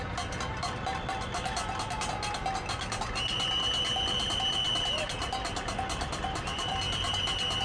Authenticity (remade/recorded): recorded